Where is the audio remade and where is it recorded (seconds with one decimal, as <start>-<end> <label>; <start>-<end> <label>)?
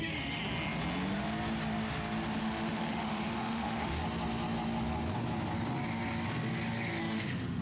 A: 0.0-0.4 remade; 0.4-2.4 recorded; 2.4-4.0 remade; 4.0-7.0 recorded; 7.0-7.6 remade